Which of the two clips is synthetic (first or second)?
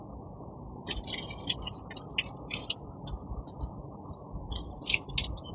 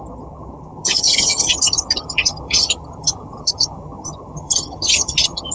second